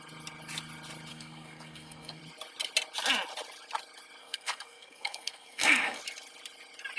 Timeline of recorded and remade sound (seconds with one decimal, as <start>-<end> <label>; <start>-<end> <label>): 0.0-1.1 recorded; 1.1-2.2 remade; 2.2-4.2 recorded; 4.2-6.0 remade; 6.0-7.0 recorded